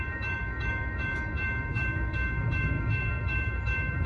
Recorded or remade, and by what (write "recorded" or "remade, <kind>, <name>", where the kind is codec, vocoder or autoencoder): remade, autoencoder, DAC-VAE